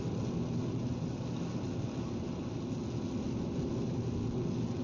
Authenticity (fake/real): real